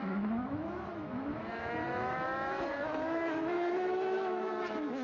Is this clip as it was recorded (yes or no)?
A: no